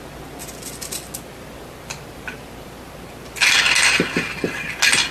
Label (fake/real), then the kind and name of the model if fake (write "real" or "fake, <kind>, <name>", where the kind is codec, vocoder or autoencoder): real